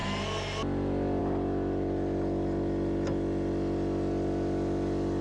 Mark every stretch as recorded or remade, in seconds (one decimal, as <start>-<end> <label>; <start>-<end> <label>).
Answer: 0.0-5.2 recorded